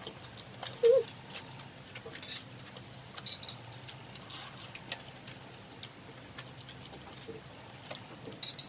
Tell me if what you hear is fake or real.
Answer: real